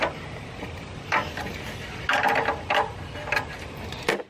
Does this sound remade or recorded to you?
recorded